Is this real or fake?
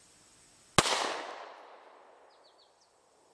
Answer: real